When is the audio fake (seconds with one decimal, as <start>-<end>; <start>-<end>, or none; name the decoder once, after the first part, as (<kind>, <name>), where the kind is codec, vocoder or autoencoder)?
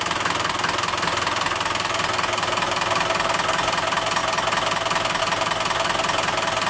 none